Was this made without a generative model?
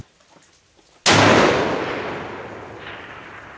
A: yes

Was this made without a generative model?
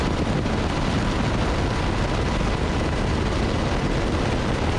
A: yes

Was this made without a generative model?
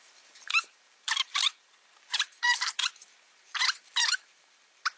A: no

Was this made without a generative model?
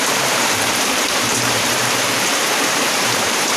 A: no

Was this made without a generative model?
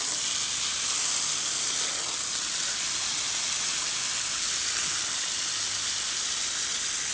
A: yes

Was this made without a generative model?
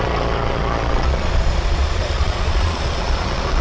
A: no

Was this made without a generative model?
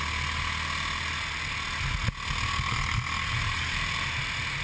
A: yes